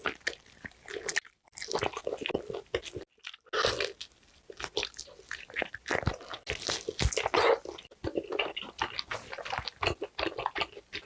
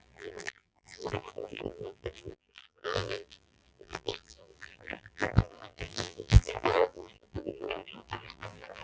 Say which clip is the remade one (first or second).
second